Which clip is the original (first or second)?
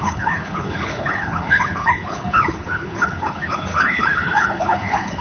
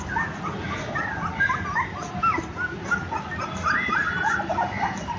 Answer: second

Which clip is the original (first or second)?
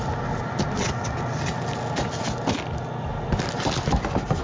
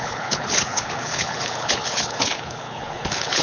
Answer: first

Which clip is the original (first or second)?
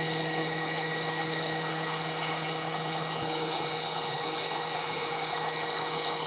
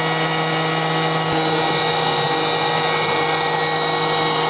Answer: second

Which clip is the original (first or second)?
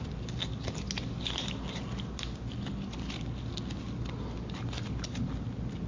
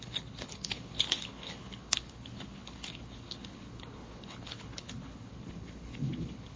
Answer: first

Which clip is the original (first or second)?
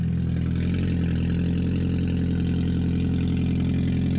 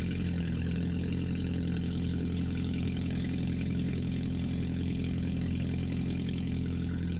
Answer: first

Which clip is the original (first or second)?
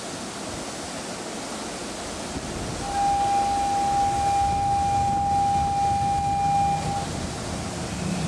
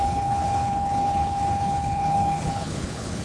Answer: first